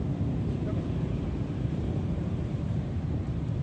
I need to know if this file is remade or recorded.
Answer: remade